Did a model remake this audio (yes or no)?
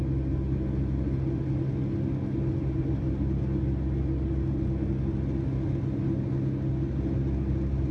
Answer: no